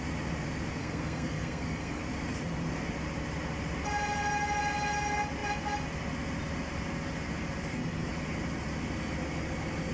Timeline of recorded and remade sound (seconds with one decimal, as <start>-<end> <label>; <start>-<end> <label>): 0.0-0.8 recorded; 0.8-2.0 remade; 2.0-9.9 recorded